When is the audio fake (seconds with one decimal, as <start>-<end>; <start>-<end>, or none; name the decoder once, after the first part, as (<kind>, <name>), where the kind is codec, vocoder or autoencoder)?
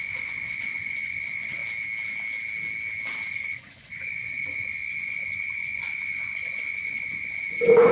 0.0-1.6 (vocoder, Vocos); 3.3-7.9